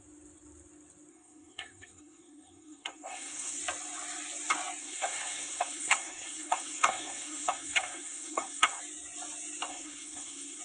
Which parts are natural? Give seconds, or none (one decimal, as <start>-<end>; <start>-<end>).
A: 0.0-1.1; 3.6-4.8; 8.8-9.7